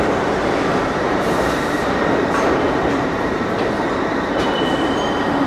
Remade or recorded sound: remade